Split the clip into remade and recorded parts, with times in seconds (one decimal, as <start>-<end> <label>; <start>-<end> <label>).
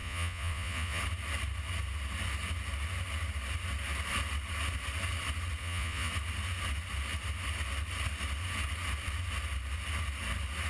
0.0-1.0 remade; 1.0-5.6 recorded; 5.6-6.1 remade; 6.1-10.7 recorded